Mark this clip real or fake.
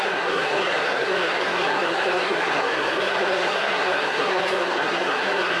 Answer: fake